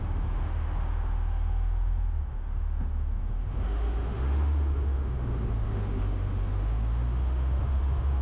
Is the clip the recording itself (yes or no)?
no